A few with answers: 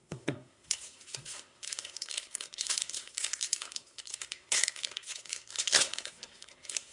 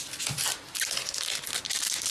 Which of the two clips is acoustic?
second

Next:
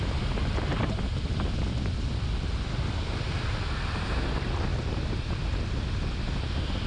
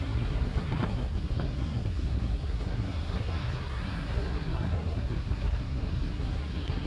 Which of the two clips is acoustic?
first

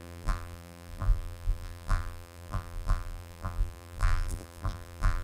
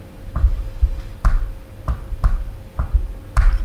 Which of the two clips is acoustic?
second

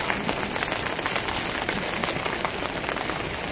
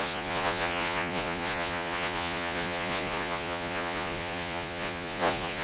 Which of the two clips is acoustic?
first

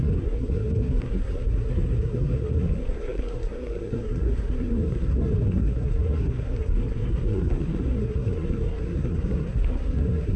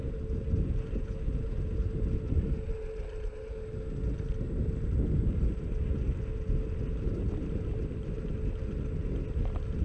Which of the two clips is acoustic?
second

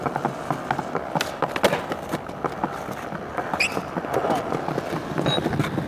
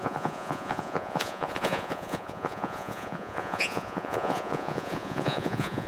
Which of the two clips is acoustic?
first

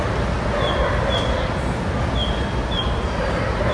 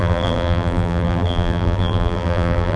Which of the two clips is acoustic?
first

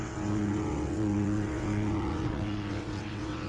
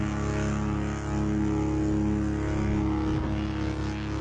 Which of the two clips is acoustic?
second